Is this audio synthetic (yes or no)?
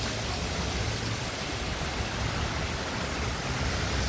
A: no